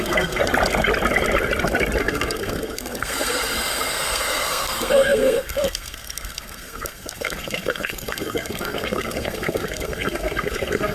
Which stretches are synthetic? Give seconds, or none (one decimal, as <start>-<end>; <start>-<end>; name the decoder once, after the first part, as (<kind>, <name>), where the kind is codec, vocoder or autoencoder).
0.0-0.4 (codec, SNAC); 2.0-10.9

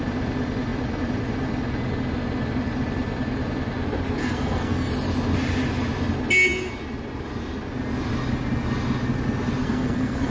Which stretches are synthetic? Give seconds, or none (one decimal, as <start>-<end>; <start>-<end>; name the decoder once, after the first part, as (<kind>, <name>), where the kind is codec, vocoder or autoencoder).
4.2-4.9 (codec, SNAC); 9.6-10.3